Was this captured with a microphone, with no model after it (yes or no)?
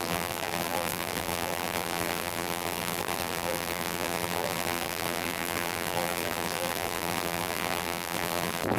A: no